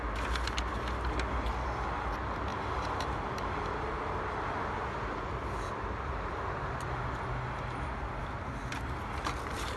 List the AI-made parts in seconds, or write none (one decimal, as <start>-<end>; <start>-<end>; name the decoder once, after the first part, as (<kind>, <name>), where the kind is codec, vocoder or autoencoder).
2.5-3.5 (vocoder, BigVGAN v2)